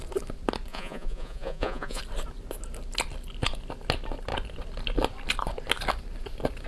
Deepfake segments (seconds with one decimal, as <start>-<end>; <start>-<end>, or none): 0.7-2.0